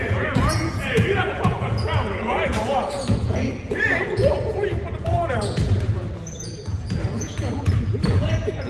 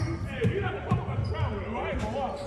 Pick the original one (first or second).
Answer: second